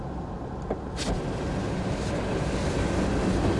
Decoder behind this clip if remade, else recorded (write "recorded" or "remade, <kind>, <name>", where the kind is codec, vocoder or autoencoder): recorded